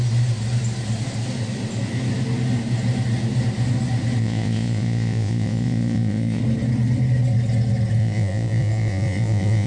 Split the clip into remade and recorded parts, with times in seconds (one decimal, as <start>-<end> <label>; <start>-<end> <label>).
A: 0.0-4.2 recorded; 4.2-6.4 remade; 6.4-8.0 recorded; 8.0-9.7 remade